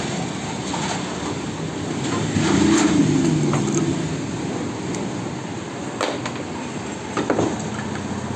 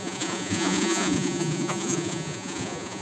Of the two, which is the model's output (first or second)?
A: second